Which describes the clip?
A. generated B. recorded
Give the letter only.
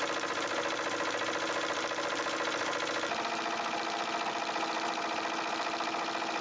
B